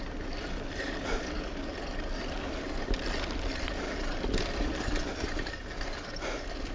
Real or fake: real